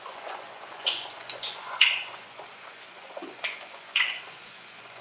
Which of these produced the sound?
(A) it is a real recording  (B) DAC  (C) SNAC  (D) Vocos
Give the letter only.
D